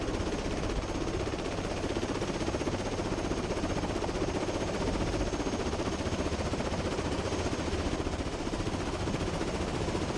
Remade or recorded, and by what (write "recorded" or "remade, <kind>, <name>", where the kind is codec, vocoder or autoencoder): recorded